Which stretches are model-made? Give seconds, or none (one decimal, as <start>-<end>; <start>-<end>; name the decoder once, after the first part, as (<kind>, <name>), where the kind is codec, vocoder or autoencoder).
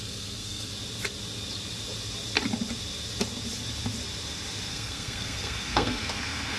0.0-0.7 (codec, SNAC); 4.7-6.6